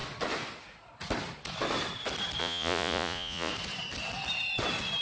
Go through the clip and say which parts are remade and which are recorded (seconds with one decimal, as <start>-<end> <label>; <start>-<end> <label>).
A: 0.0-2.4 recorded; 2.4-3.5 remade; 3.5-5.0 recorded